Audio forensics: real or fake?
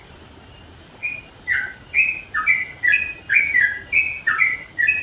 real